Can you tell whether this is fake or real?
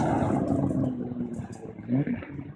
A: fake